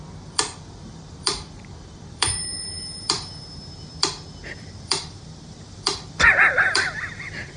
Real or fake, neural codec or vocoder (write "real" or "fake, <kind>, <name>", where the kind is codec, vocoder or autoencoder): fake, vocoder, BigVGAN v2